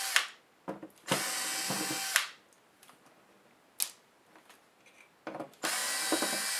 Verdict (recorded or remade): recorded